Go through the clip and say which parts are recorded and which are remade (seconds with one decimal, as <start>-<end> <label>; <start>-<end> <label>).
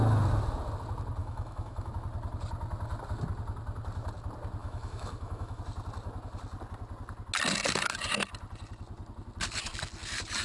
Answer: 0.0-1.2 recorded; 1.2-1.9 remade; 1.9-4.6 recorded; 4.6-5.6 remade; 5.6-10.4 recorded